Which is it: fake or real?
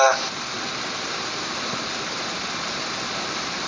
fake